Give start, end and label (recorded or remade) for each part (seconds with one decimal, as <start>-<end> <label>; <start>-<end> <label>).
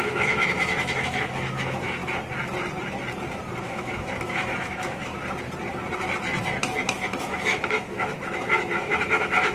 0.0-2.0 remade; 2.0-3.6 recorded; 3.6-5.1 remade; 5.1-6.9 recorded; 6.9-9.5 remade